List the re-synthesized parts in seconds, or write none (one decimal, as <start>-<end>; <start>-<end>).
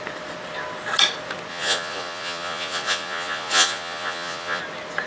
1.5-4.6